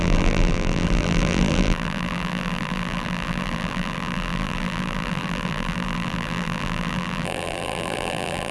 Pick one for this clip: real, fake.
fake